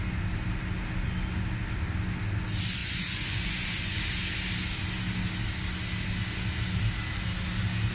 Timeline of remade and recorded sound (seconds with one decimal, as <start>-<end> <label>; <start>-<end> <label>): 0.0-2.8 recorded; 2.8-4.0 remade; 4.0-7.9 recorded